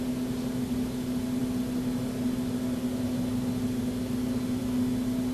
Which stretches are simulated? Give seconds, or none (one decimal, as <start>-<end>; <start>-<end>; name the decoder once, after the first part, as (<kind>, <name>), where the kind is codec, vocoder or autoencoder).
none